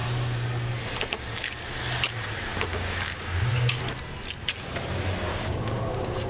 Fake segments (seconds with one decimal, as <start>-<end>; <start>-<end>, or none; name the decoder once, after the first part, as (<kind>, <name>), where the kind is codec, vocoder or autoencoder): 2.7-3.8 (codec, DAC); 5.3-6.3